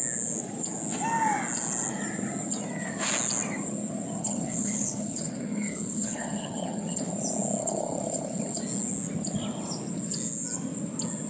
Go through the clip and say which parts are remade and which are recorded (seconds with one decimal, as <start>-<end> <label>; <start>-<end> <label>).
0.0-4.2 recorded; 4.2-7.1 remade; 7.1-7.6 recorded; 7.6-8.6 remade; 8.6-11.3 recorded